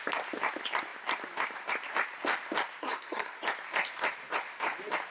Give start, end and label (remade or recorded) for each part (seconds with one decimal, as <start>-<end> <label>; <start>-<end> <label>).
0.0-2.8 recorded; 2.8-3.4 remade; 3.4-5.1 recorded